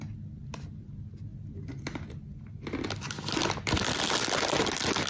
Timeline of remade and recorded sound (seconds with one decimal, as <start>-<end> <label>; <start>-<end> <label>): 0.0-5.1 recorded